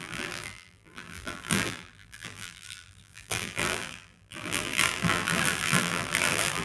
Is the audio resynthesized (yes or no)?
yes